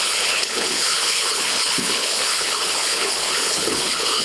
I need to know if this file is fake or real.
fake